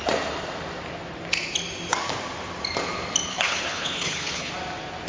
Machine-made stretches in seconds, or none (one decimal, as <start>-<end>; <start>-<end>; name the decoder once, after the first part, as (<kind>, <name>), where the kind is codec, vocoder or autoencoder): 3.3-4.5 (codec, HILCodec)